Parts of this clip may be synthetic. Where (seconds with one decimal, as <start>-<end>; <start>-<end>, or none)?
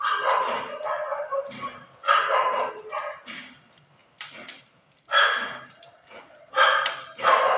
none